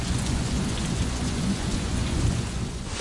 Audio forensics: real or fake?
fake